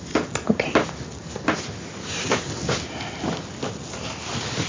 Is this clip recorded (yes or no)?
yes